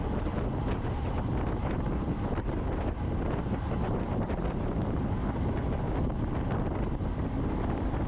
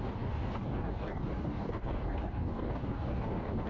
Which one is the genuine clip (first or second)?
first